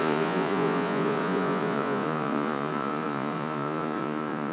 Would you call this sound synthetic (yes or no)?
yes